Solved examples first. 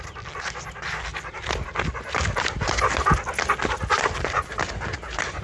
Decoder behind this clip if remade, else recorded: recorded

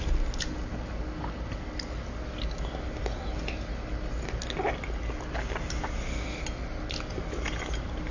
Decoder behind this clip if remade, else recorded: recorded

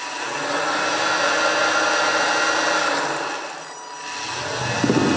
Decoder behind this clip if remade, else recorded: recorded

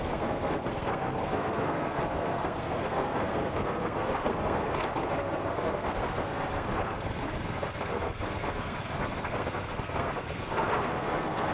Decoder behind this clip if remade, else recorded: remade, codec, SNAC